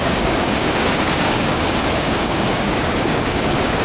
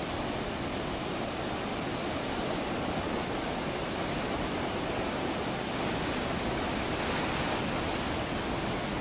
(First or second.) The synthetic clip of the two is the first